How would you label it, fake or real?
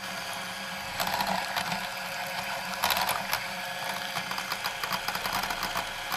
real